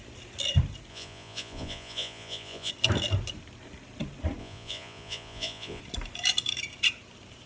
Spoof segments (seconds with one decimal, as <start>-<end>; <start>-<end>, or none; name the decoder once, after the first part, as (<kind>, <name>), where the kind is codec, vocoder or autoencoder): 0.9-2.7 (vocoder, Vocos); 4.4-5.8